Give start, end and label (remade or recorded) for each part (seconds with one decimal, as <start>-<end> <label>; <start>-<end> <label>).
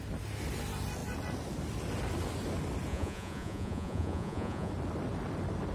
0.0-2.9 recorded; 2.9-4.7 remade; 4.7-5.7 recorded